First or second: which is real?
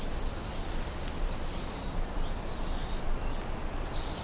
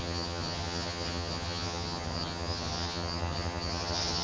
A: first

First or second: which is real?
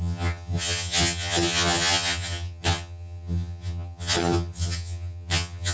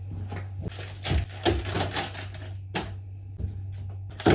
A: second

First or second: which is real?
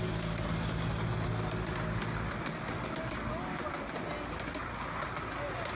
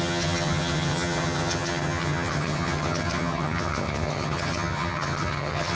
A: first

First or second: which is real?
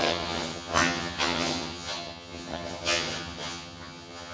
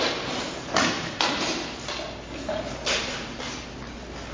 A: second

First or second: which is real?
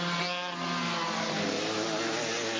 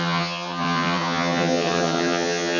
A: first